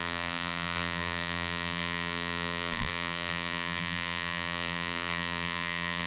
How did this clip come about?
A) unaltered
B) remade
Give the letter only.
B